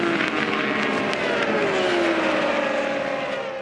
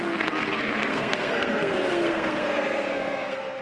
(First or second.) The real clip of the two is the first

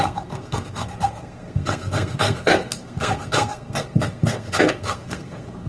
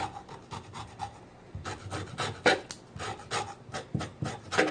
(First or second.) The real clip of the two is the second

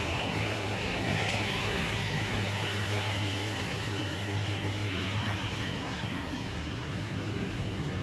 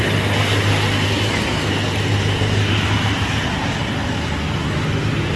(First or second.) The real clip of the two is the second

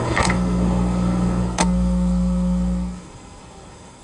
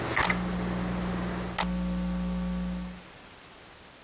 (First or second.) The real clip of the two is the second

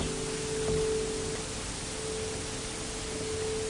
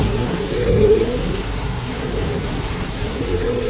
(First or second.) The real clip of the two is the first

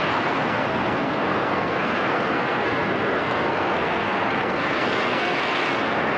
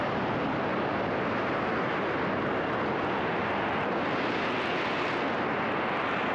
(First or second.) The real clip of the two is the second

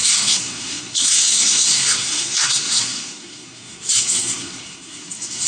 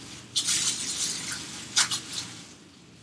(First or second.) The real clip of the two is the second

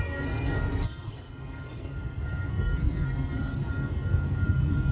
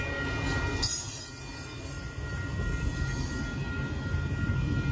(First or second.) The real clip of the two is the second